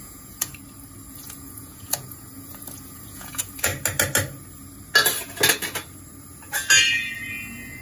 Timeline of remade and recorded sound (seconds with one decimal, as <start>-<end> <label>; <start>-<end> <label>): 0.0-0.5 remade; 0.5-1.1 recorded; 1.1-3.7 remade; 3.7-7.3 recorded; 7.3-7.8 remade